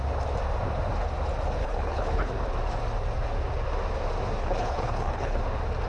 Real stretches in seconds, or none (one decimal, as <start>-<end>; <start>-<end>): 0.0-1.6; 2.3-4.4; 5.4-5.9